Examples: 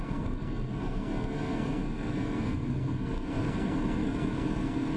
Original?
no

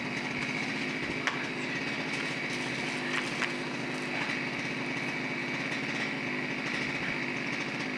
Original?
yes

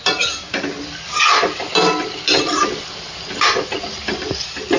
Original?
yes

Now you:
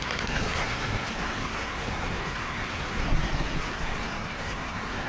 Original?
no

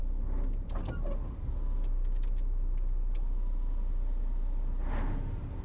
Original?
yes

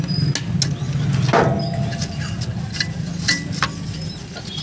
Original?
yes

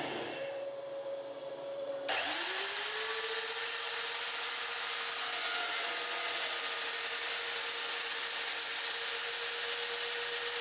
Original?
yes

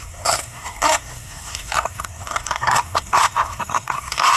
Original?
no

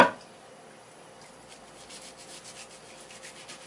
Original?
yes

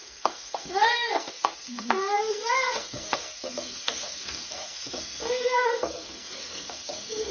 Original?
no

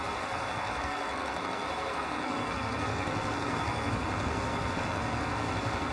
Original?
no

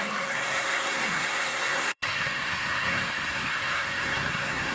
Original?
no